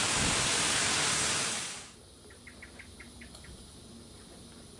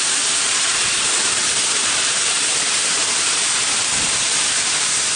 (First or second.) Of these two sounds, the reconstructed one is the second